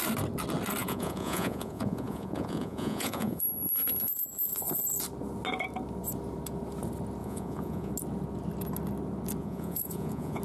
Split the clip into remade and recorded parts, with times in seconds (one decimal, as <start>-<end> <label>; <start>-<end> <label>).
0.0-0.8 recorded; 0.8-4.8 remade; 4.8-7.2 recorded; 7.2-7.9 remade; 7.9-9.4 recorded; 9.4-10.4 remade